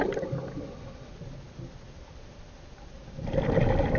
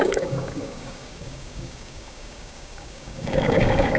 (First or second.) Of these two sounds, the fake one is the second